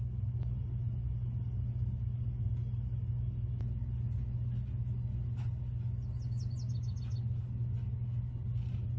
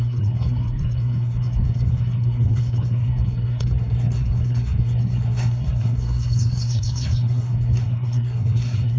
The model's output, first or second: second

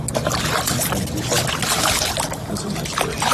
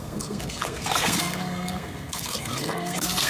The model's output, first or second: second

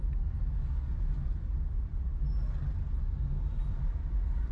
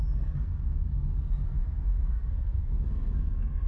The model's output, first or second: second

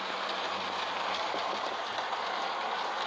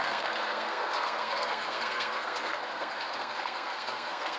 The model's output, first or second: second